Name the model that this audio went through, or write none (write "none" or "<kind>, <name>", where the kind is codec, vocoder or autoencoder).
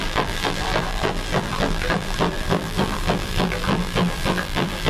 vocoder, BigVGAN v2